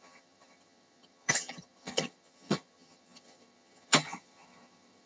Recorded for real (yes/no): no